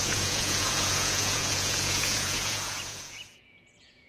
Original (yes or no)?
no